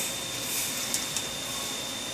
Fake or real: real